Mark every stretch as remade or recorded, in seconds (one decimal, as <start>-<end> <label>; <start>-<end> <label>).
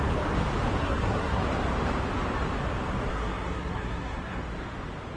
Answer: 0.0-0.8 recorded; 0.8-1.4 remade; 1.4-3.1 recorded; 3.1-4.4 remade; 4.4-5.2 recorded